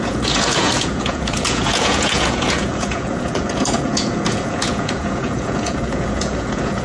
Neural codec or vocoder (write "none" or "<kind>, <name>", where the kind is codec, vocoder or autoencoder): vocoder, Vocos